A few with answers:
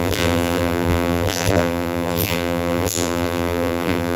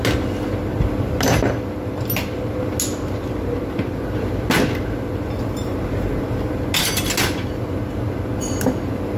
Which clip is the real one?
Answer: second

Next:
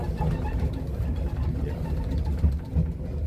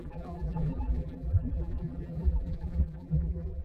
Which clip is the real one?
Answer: first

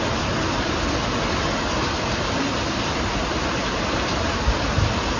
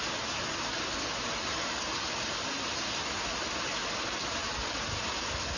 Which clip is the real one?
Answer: second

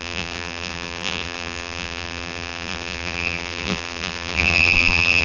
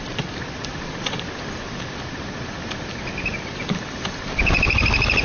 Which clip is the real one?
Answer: second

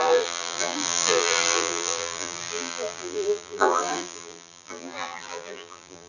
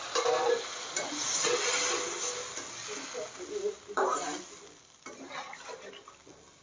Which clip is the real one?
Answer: second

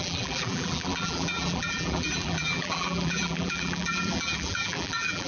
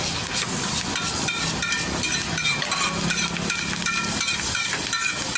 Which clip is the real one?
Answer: second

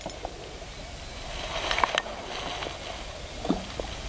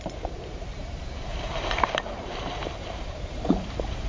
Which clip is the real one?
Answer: first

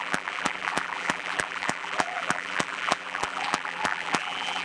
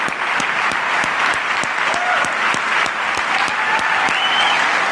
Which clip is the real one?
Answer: second